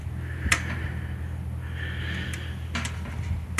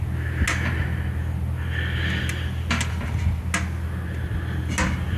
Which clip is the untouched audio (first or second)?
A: second